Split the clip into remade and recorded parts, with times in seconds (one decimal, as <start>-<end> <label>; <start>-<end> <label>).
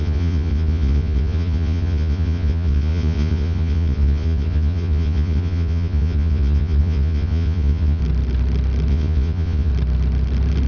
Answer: 0.0-8.0 remade; 8.0-8.9 recorded; 8.9-9.7 remade; 9.7-10.7 recorded